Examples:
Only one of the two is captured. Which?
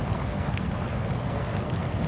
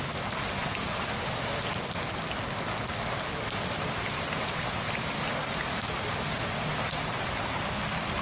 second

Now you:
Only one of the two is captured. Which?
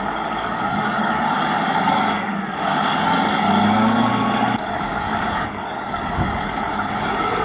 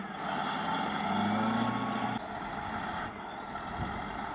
second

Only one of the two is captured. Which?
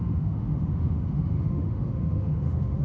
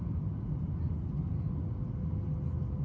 second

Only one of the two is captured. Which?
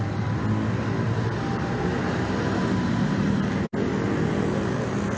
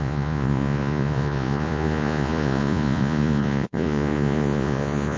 first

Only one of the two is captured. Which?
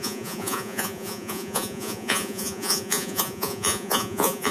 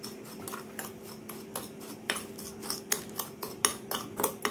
second